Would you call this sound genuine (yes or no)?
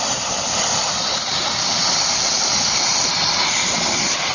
yes